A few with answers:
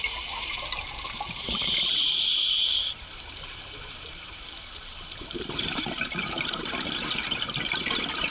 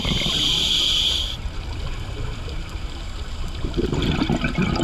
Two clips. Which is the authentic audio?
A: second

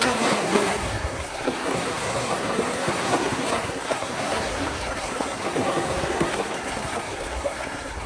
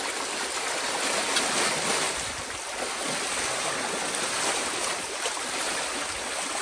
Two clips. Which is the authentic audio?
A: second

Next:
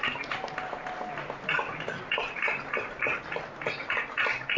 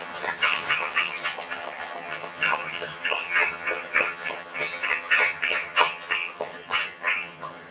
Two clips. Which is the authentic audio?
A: first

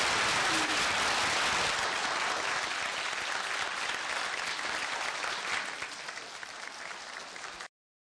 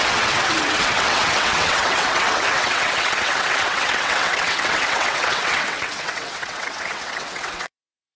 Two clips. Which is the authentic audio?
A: first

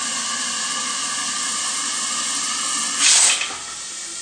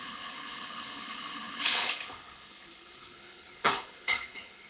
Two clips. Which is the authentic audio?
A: first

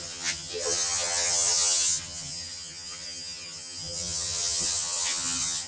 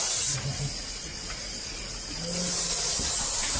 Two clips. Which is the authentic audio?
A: second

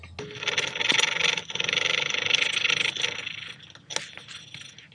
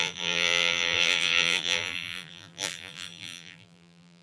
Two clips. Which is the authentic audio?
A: first